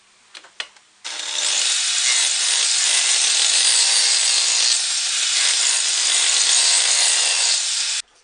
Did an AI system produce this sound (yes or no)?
no